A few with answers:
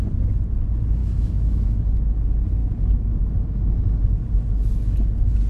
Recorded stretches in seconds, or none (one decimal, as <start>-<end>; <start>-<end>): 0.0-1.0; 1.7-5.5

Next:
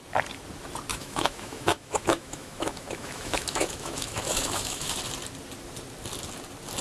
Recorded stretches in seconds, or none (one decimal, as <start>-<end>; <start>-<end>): 0.0-0.9; 5.0-6.8

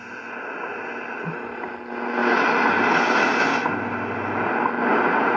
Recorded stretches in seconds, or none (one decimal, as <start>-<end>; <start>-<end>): 0.0-5.4